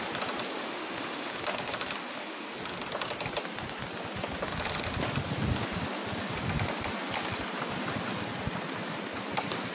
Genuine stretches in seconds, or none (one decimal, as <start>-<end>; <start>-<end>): 0.0-0.5; 1.4-2.0; 2.6-9.7